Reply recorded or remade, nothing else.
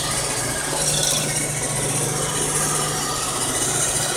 recorded